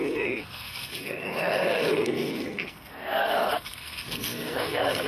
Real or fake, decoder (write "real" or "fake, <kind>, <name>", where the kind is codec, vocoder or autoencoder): fake, codec, SNAC